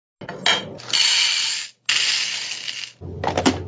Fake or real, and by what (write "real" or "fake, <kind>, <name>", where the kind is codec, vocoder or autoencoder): real